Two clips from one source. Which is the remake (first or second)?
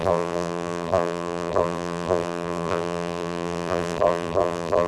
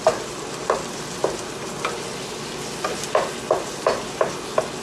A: first